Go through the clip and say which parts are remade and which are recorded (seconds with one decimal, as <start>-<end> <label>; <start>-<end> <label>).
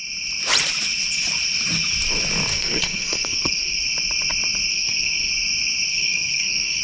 0.0-2.5 recorded; 2.5-3.8 remade; 3.8-4.7 recorded; 4.7-5.3 remade; 5.3-5.9 recorded; 5.9-6.8 remade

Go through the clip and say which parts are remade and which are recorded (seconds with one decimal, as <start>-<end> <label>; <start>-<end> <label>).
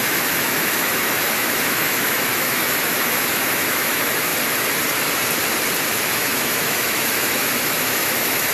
0.0-4.3 remade; 4.3-5.8 recorded; 5.8-8.5 remade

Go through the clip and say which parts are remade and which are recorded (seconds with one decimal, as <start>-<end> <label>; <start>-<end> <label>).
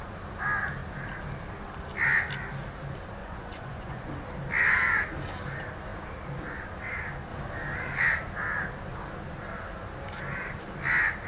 0.0-3.2 recorded; 3.2-4.1 remade; 4.1-11.3 recorded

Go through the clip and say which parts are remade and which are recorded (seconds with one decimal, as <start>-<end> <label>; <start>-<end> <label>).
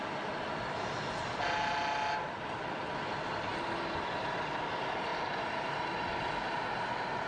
0.0-7.3 recorded